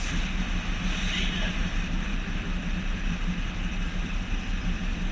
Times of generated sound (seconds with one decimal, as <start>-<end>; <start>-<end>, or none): none